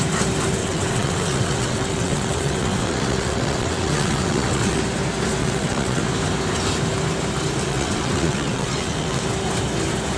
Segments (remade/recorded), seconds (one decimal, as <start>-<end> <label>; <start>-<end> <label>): 0.0-0.6 recorded; 0.6-4.8 remade; 4.8-5.4 recorded; 5.4-6.0 remade; 6.0-7.7 recorded; 7.7-9.2 remade; 9.2-10.2 recorded